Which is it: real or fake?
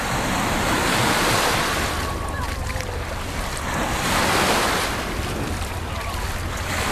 real